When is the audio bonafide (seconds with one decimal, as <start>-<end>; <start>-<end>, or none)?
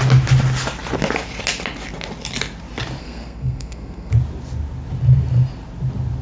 0.0-3.0; 4.1-6.2